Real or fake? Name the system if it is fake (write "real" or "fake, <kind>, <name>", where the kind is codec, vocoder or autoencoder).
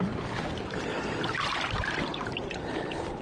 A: fake, vocoder, BigVGAN v2